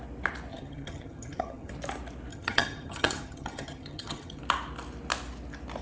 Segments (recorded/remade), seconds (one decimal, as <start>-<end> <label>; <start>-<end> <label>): 0.0-0.5 recorded; 0.5-1.7 remade; 1.7-2.3 recorded; 2.3-4.4 remade; 4.4-5.8 recorded